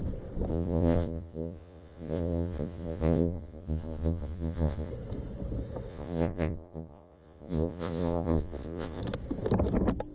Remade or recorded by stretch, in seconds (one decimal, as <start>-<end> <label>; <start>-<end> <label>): 0.0-0.5 recorded; 0.5-4.9 remade; 4.9-5.9 recorded; 5.9-9.0 remade; 9.0-10.1 recorded